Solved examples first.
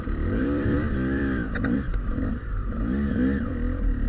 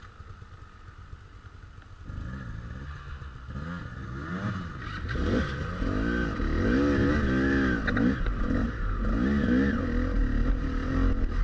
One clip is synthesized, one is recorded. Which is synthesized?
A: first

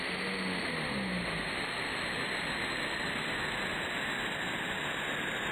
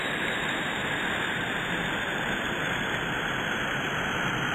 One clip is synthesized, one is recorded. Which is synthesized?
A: second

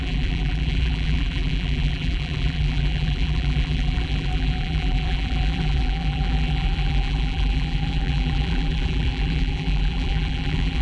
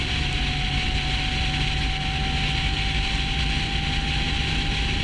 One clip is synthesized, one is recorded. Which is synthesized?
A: first